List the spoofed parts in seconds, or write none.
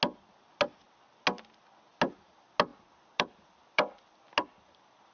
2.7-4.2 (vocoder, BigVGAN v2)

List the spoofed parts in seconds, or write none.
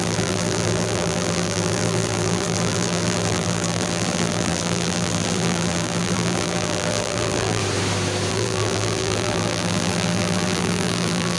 0.0-7.6 (vocoder, BigVGAN v2); 8.3-11.4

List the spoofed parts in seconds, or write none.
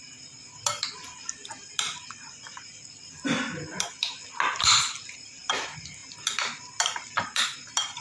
0.0-8.0 (vocoder, BigVGAN v2)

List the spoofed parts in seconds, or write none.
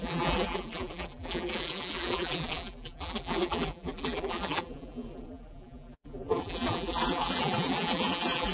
0.0-8.5 (vocoder, BigVGAN v2)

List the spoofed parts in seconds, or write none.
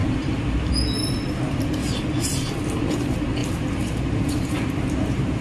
0.0-0.7 (vocoder, BigVGAN v2); 3.4-5.4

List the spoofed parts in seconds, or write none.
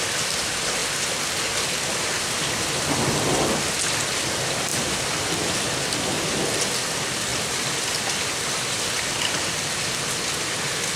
4.7-5.3 (vocoder, BigVGAN v2)